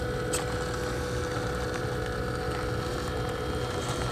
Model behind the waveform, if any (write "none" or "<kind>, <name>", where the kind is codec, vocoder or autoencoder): none